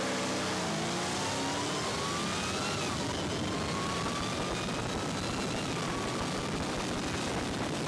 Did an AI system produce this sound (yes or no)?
no